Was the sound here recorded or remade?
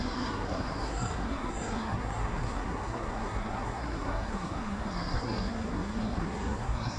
remade